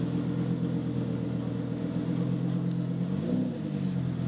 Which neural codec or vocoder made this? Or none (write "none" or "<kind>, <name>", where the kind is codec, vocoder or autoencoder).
none